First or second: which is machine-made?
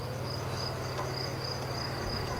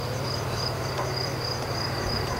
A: second